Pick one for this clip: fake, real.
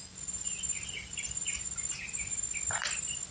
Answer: real